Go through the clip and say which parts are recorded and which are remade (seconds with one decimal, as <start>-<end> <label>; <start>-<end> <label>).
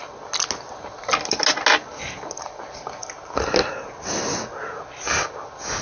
0.0-5.8 recorded